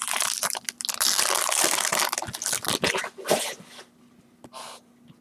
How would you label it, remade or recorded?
recorded